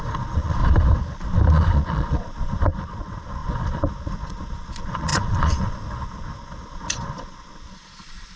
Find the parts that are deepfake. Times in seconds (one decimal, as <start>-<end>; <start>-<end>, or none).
0.0-0.6; 1.5-8.4